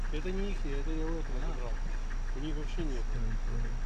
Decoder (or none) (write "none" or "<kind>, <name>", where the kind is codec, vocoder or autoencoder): none